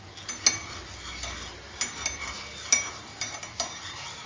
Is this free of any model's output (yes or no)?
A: yes